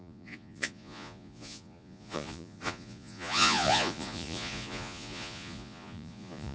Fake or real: fake